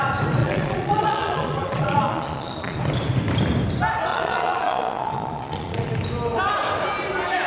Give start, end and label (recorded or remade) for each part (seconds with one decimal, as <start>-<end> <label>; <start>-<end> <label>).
0.0-0.4 recorded; 0.4-2.8 remade; 2.8-4.1 recorded; 4.1-5.9 remade; 5.9-7.5 recorded